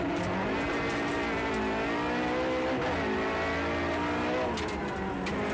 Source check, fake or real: real